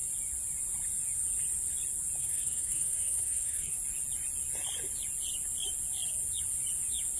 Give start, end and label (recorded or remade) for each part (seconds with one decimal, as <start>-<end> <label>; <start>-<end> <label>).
0.0-2.2 recorded; 2.2-3.8 remade; 3.8-7.2 recorded